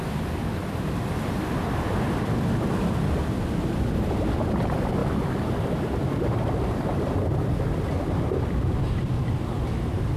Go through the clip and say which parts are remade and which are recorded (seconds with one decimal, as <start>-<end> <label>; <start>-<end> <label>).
0.0-10.2 recorded

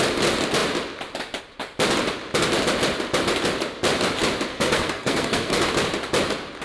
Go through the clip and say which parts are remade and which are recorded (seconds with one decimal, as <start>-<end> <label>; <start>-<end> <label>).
0.0-4.5 recorded; 4.5-5.7 remade; 5.7-6.6 recorded

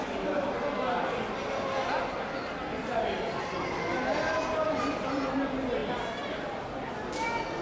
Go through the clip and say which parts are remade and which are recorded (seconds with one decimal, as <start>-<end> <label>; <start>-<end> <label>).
0.0-5.8 recorded; 5.8-6.9 remade; 6.9-7.6 recorded

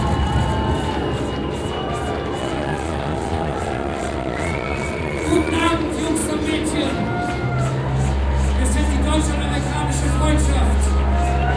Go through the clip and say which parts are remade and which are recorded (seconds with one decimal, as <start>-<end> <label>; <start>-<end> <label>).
0.0-2.4 recorded; 2.4-5.7 remade; 5.7-11.6 recorded

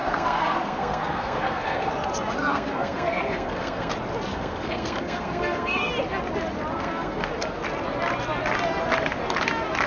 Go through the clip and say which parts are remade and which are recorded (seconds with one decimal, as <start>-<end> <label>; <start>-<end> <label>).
0.0-1.9 remade; 1.9-2.4 recorded; 2.4-3.9 remade; 3.9-4.3 recorded; 4.3-5.9 remade; 5.9-6.7 recorded; 6.7-7.3 remade; 7.3-9.9 recorded

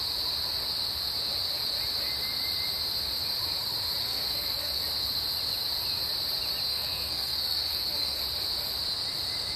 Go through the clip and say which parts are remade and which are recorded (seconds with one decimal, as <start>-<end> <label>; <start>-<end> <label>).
0.0-4.0 recorded; 4.0-4.8 remade; 4.8-6.7 recorded; 6.7-8.2 remade; 8.2-9.6 recorded